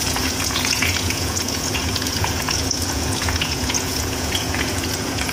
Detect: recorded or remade remade